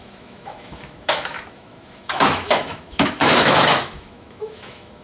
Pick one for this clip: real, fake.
fake